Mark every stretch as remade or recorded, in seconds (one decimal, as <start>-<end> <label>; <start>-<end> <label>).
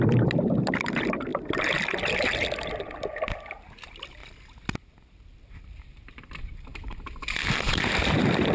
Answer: 0.0-1.3 recorded; 1.3-2.7 remade; 2.7-4.2 recorded; 4.2-6.3 remade; 6.3-8.5 recorded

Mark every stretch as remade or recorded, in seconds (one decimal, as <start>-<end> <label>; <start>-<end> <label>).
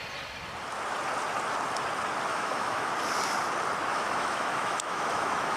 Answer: 0.0-2.3 recorded; 2.3-2.9 remade; 2.9-3.9 recorded; 3.9-5.6 remade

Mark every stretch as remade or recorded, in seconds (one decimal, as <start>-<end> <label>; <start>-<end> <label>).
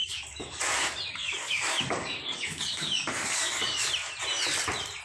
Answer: 0.0-0.6 remade; 0.6-1.2 recorded; 1.2-3.9 remade; 3.9-5.0 recorded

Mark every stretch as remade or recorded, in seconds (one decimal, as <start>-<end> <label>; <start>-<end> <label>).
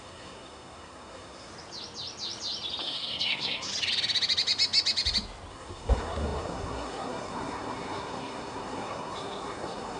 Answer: 0.0-1.5 remade; 1.5-2.8 recorded; 2.8-3.7 remade; 3.7-5.5 recorded; 5.5-10.0 remade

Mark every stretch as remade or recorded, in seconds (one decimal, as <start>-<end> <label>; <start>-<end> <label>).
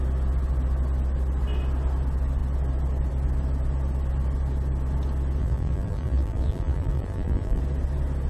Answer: 0.0-5.4 recorded; 5.4-7.6 remade; 7.6-8.3 recorded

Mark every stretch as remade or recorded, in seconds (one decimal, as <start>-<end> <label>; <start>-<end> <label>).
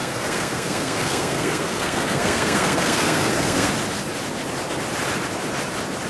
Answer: 0.0-3.7 remade; 3.7-6.1 recorded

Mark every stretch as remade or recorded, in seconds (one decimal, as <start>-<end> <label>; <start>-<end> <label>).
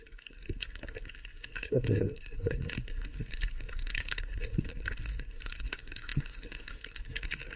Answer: 0.0-7.6 remade